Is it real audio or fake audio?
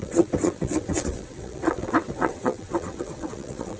fake